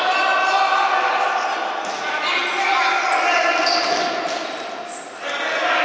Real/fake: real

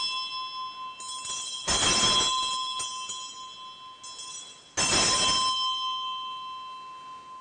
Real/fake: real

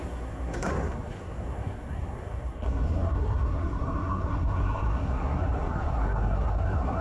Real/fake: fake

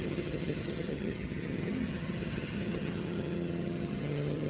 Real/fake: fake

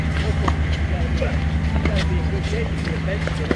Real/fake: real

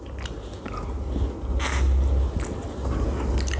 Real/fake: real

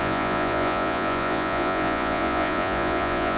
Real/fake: fake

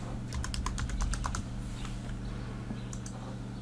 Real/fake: real